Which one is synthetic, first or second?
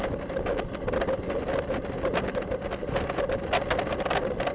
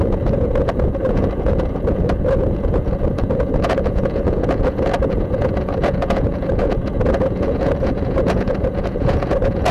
second